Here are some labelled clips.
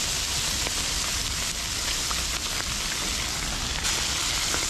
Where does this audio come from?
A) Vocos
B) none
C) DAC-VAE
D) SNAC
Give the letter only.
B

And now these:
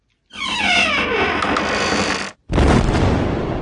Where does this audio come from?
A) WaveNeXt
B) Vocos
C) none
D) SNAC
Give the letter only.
C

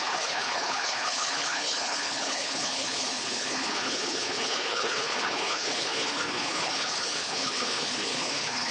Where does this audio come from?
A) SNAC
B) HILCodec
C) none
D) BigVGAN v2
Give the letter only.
B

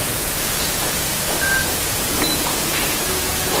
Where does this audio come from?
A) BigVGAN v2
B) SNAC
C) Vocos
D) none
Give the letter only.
C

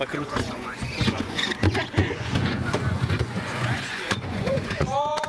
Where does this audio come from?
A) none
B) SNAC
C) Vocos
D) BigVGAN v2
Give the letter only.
C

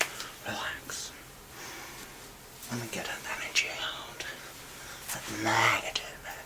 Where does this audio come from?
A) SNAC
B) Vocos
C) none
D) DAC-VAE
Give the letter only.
C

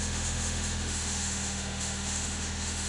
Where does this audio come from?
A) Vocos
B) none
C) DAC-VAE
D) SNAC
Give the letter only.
C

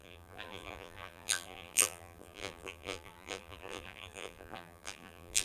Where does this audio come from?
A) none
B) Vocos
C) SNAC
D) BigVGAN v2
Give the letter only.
D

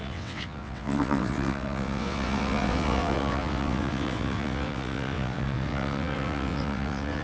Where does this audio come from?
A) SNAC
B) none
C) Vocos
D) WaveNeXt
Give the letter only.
D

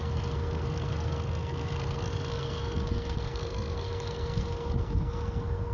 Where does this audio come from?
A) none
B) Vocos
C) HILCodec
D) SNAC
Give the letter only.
D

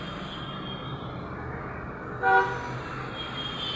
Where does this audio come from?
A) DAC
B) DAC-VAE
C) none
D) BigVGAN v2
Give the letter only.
C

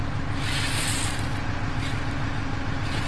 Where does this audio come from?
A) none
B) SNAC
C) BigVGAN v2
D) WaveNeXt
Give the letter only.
A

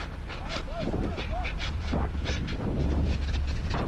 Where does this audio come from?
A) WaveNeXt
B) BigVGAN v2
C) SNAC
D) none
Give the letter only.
B